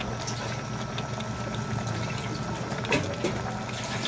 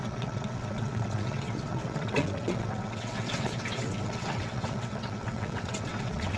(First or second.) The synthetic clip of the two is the second